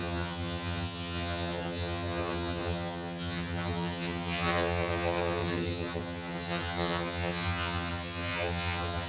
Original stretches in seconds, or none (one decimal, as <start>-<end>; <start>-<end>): none